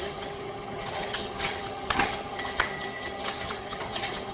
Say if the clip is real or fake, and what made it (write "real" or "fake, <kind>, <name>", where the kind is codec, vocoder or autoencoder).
fake, vocoder, HiFi-GAN